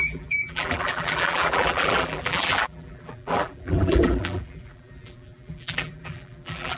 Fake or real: fake